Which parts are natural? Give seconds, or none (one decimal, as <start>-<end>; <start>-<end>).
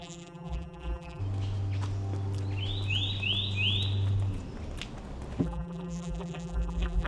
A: 1.2-5.4